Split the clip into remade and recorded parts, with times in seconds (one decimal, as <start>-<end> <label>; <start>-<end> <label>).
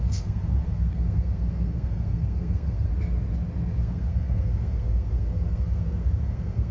0.0-2.9 remade; 2.9-3.8 recorded; 3.8-6.7 remade